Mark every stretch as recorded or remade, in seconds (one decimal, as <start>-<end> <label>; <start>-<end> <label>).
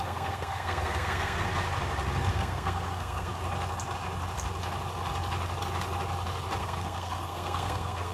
0.0-1.5 remade; 1.5-2.3 recorded; 2.3-3.3 remade; 3.3-6.6 recorded; 6.6-8.1 remade